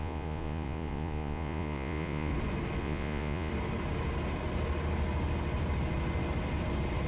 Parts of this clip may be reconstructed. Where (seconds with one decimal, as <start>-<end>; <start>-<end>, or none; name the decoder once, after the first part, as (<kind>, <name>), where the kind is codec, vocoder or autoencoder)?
0.0-2.3 (vocoder, Vocos); 2.8-3.5